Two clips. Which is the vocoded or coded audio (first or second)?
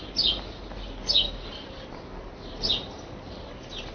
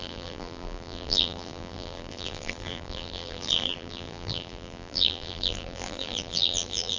second